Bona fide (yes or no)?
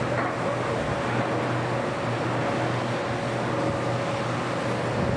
yes